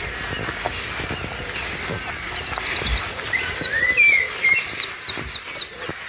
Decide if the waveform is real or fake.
real